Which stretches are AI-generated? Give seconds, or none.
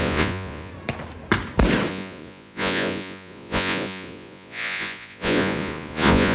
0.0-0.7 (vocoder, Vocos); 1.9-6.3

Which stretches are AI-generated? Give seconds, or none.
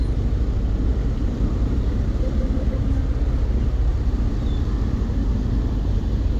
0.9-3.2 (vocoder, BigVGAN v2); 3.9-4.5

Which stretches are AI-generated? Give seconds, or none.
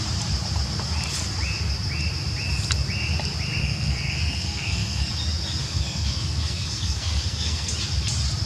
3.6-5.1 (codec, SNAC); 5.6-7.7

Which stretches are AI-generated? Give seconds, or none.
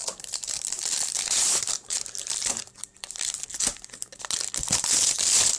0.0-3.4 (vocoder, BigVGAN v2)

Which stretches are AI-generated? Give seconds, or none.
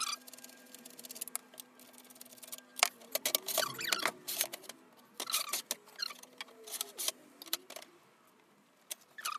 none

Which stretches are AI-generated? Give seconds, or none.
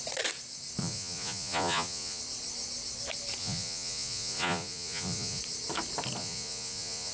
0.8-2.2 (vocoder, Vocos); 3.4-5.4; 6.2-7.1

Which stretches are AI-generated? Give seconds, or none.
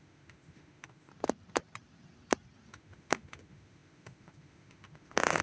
0.0-1.1 (autoencoder, DAC-VAE); 2.7-5.4